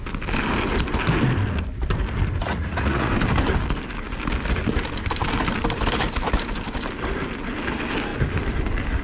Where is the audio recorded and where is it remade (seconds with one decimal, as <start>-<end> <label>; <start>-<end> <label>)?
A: 0.0-2.5 recorded; 2.5-3.1 remade; 3.1-9.0 recorded